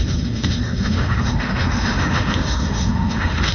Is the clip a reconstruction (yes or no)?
yes